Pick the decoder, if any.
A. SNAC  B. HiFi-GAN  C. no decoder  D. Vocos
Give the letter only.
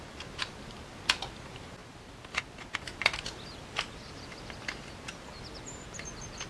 C